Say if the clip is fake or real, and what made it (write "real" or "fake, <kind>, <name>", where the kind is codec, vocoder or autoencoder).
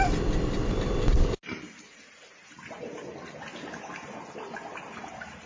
real